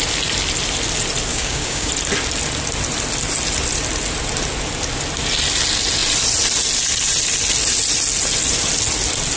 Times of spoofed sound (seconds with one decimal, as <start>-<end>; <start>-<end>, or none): 1.3-1.9